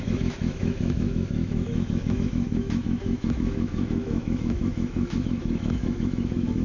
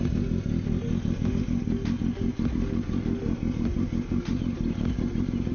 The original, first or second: second